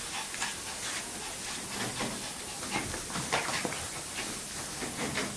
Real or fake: real